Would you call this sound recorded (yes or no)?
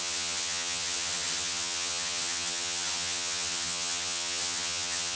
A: no